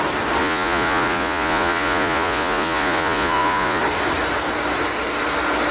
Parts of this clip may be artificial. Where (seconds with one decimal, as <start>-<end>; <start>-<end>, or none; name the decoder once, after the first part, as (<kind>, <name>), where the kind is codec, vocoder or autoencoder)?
0.4-3.8 (vocoder, Vocos)